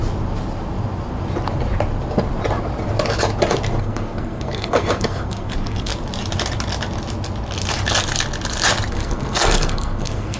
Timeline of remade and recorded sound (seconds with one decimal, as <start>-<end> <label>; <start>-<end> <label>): 0.0-3.8 recorded; 3.8-5.9 remade; 5.9-8.9 recorded; 8.9-10.4 remade